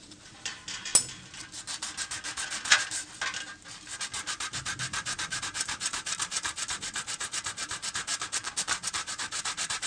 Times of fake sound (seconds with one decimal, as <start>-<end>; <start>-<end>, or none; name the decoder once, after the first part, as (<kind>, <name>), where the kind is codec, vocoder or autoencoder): 0.0-0.9 (vocoder, BigVGAN v2); 5.4-8.1; 8.9-9.9